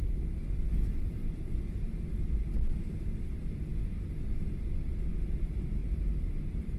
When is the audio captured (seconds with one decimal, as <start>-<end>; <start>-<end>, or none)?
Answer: 0.0-5.8